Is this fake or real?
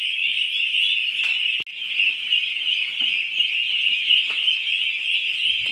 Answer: real